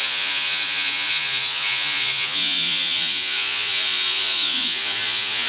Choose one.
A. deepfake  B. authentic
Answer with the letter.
A